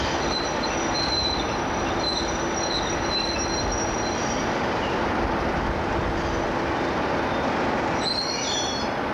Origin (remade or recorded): recorded